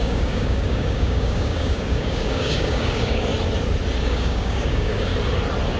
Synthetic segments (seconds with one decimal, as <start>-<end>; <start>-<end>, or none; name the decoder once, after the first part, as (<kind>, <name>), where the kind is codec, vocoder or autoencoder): 0.0-3.3 (codec, DAC); 4.0-5.1

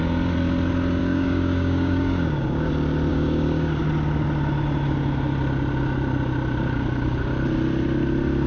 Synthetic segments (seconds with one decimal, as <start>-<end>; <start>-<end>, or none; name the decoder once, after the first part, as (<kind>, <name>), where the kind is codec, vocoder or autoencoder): 1.0-2.7 (codec, DAC); 3.1-3.8

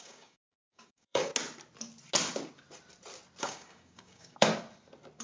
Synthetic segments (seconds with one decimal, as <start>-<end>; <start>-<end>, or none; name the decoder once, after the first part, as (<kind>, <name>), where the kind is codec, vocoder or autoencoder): 0.0-1.3 (codec, DAC); 3.4-4.5

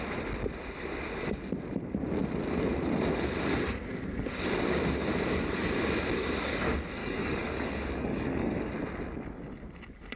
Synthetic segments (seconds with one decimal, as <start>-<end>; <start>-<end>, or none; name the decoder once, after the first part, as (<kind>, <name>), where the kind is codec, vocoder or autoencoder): 7.0-8.7 (codec, DAC)

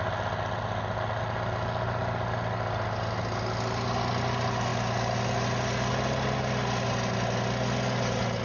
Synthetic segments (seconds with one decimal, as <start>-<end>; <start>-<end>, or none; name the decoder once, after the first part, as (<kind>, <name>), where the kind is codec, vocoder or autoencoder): none

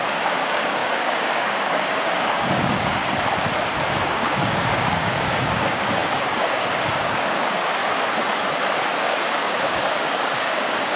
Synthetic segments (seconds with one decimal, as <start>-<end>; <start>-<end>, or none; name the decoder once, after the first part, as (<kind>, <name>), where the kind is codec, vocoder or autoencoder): 0.0-3.0 (codec, DAC); 3.9-7.8; 9.0-11.0

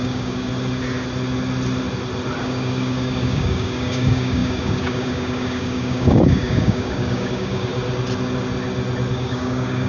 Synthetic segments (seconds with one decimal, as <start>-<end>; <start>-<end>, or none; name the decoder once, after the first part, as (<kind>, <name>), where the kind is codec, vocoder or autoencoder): 0.0-0.5 (codec, DAC); 2.4-7.7; 9.1-9.9